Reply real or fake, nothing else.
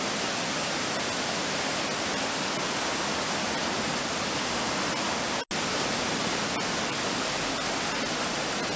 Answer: real